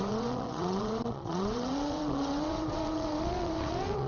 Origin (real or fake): fake